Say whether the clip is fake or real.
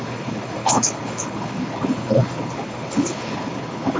fake